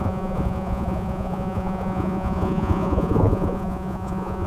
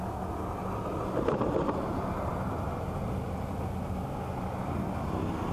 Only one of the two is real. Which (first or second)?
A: second